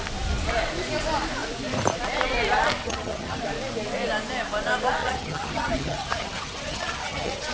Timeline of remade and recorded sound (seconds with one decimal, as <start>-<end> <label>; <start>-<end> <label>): 0.0-2.8 recorded; 2.8-3.4 remade; 3.4-5.0 recorded; 5.0-7.5 remade